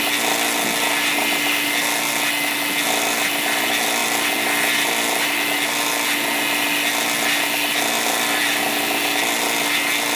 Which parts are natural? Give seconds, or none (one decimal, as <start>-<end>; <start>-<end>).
0.0-10.2